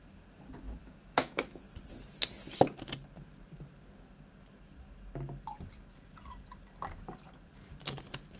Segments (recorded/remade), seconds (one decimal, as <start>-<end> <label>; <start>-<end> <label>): 0.0-0.8 recorded; 0.8-1.6 remade; 1.6-8.4 recorded